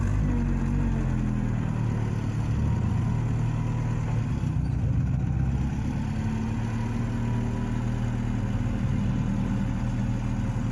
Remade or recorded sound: recorded